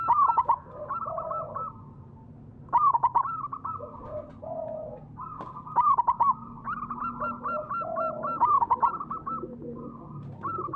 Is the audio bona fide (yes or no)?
yes